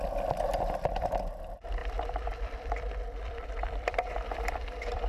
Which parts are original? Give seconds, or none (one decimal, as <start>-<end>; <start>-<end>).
none